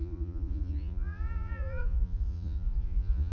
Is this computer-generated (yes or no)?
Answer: yes